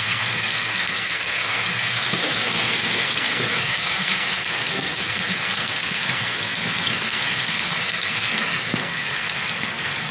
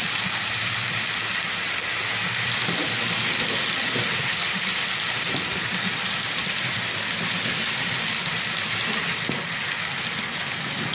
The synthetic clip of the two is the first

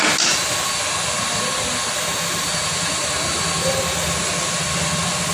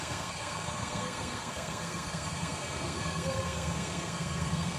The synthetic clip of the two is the second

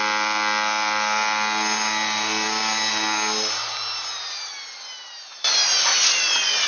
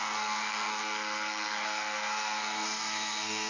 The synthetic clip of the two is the second